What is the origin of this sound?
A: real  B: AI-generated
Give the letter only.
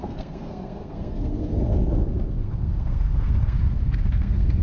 B